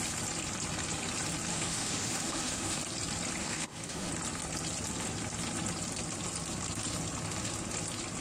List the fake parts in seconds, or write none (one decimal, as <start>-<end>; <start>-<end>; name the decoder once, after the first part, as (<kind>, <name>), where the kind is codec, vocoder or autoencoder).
1.5-2.8 (autoencoder, DAC-VAE); 3.4-4.1